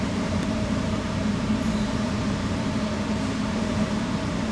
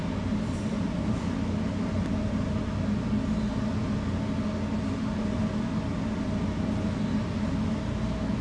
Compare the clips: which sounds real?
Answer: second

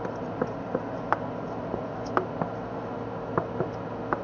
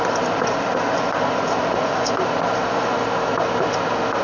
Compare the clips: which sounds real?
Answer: first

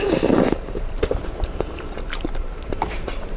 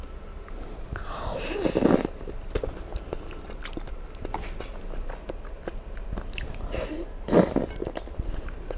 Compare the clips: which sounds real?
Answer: second